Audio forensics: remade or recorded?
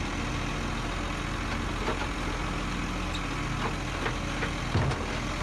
recorded